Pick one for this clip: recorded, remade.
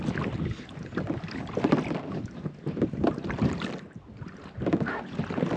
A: recorded